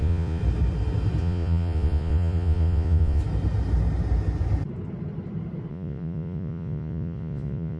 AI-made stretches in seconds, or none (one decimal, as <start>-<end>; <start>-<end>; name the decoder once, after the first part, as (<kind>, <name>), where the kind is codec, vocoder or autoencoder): 0.0-0.4 (vocoder, Vocos); 1.2-3.2; 5.7-7.8